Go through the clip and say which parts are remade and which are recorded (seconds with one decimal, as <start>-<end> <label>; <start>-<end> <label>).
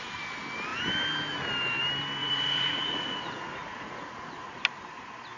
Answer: 0.0-2.2 recorded; 2.2-4.6 remade; 4.6-5.4 recorded